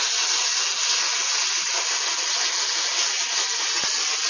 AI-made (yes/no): no